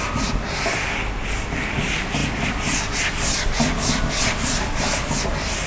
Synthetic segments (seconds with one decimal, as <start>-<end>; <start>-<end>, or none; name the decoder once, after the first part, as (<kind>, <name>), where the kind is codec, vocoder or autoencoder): none